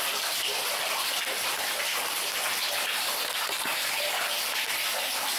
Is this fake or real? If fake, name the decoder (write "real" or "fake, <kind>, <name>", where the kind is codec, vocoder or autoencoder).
real